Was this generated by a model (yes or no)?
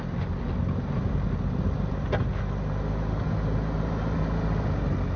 no